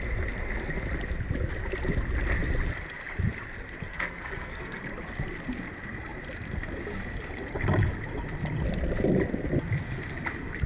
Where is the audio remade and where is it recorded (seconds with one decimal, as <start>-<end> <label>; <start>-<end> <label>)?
0.0-3.9 recorded; 3.9-4.8 remade; 4.8-10.7 recorded

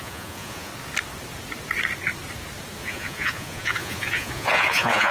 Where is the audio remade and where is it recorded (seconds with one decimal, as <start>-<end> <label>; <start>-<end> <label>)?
0.0-0.7 remade; 0.7-2.8 recorded; 2.8-5.1 remade